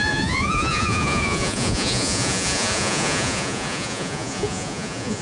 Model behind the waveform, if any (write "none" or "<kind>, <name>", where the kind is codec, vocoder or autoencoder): vocoder, Vocos